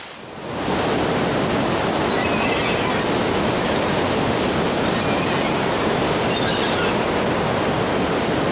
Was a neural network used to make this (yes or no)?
no